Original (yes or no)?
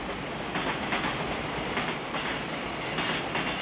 yes